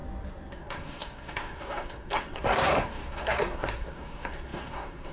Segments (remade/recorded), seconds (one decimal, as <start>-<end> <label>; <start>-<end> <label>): 0.0-0.5 recorded; 0.5-5.1 remade

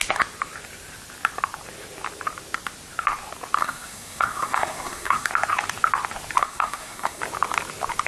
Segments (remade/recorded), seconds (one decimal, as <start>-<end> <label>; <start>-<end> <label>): 0.0-3.6 recorded; 3.6-5.3 remade; 5.3-6.4 recorded; 6.4-7.2 remade; 7.2-8.1 recorded